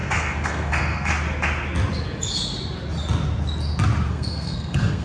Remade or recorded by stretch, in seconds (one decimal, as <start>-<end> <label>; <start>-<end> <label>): 0.0-1.1 remade; 1.1-4.1 recorded; 4.1-5.0 remade